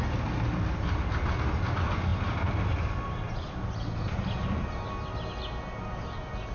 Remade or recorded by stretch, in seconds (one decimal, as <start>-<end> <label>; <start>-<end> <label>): 0.0-6.5 recorded

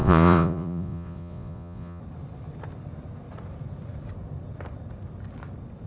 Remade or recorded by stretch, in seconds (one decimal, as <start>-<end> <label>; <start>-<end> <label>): 0.0-2.0 remade; 2.0-5.9 recorded

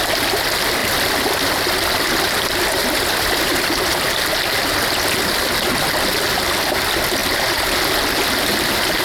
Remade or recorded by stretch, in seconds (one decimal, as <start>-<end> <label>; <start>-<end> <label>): 0.0-0.8 recorded; 0.8-1.5 remade; 1.5-2.8 recorded; 2.8-3.5 remade; 3.5-9.0 recorded

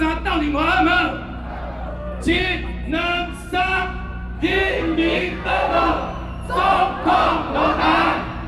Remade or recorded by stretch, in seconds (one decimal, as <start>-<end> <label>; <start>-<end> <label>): 0.0-1.9 recorded; 1.9-2.6 remade; 2.6-4.6 recorded; 4.6-5.9 remade; 5.9-8.5 recorded